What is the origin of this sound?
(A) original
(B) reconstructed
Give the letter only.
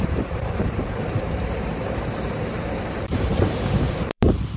B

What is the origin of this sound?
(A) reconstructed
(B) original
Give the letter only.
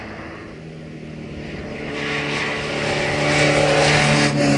B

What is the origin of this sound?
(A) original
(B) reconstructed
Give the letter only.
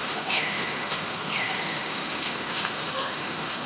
B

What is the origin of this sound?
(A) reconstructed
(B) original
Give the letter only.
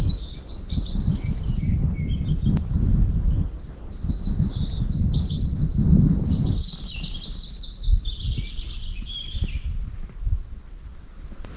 B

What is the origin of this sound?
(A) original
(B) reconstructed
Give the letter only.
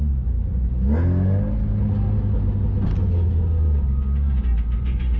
A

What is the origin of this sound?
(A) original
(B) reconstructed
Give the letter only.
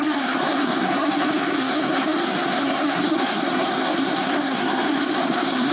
B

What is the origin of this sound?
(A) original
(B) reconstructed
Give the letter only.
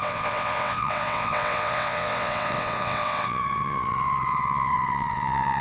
B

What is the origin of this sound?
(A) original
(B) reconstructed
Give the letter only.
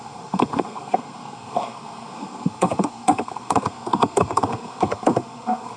B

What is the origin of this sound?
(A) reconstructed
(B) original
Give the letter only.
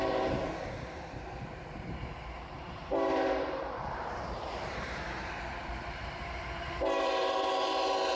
A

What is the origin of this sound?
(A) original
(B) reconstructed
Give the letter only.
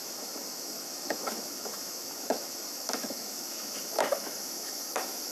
B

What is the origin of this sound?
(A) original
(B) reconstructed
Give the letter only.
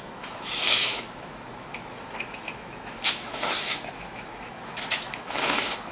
B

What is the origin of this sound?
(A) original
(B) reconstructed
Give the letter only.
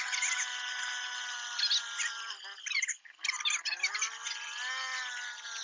A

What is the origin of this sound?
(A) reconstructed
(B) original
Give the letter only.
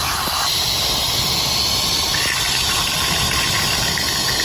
B